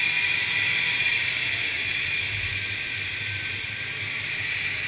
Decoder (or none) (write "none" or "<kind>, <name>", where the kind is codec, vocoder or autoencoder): vocoder, BigVGAN v2